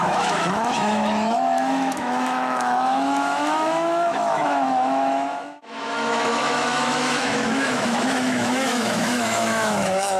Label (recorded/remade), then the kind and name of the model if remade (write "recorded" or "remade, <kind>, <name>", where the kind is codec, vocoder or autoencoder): remade, autoencoder, DAC-VAE